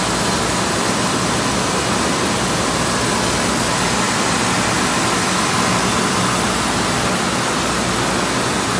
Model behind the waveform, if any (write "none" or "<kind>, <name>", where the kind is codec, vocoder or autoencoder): none